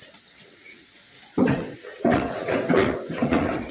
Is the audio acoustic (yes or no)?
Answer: no